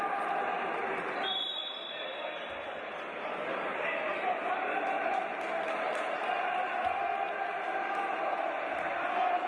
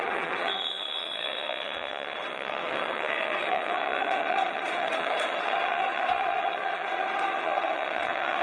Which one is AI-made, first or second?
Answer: second